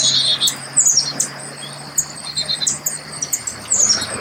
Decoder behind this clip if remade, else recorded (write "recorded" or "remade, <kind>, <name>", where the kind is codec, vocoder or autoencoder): recorded